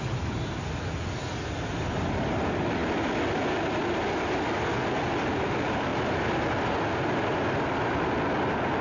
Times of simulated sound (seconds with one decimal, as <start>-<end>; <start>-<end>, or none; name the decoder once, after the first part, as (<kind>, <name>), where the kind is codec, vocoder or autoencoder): none